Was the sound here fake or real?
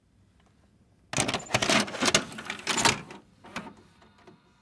real